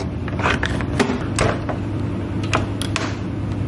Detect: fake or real real